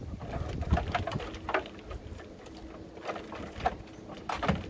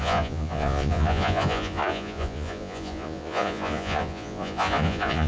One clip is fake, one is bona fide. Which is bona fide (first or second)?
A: first